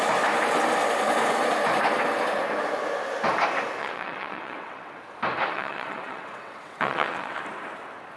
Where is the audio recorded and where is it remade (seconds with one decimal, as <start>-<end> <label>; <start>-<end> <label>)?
0.0-3.8 recorded; 3.8-5.0 remade; 5.0-5.5 recorded; 5.5-7.4 remade; 7.4-8.2 recorded